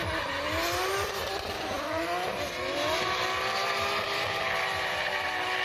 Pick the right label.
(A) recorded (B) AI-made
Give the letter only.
A